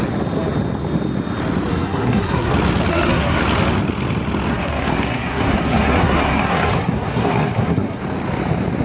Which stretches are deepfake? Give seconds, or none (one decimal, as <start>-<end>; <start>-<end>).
1.7-2.5; 2.9-3.4; 4.5-8.0